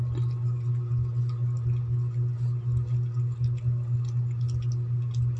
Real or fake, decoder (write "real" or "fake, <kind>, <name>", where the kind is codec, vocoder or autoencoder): real